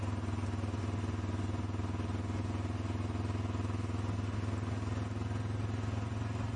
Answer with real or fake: real